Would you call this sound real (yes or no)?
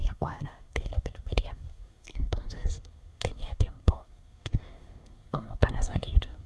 no